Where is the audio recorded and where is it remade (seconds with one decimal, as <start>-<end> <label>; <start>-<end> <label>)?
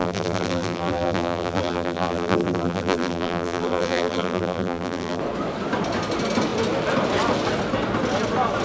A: 0.0-5.2 remade; 5.2-8.6 recorded